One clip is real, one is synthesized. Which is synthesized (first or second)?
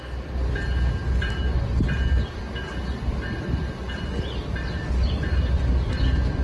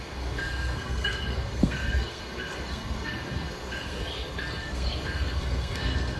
second